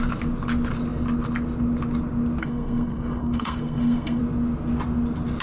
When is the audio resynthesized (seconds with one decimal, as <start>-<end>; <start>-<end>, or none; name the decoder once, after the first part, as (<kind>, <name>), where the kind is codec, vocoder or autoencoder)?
2.4-4.2 (codec, SNAC)

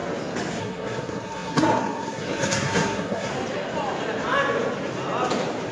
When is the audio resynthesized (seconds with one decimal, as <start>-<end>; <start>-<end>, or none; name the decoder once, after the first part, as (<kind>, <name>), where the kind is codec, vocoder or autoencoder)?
0.6-3.3 (codec, SNAC)

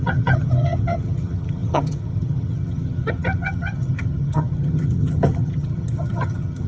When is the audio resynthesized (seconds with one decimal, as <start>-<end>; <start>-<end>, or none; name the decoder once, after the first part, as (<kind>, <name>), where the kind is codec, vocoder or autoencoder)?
0.0-6.7 (vocoder, HiFi-GAN)